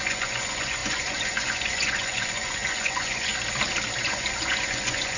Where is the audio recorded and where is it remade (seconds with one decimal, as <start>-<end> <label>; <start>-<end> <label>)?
0.0-3.3 remade; 3.3-4.0 recorded; 4.0-5.2 remade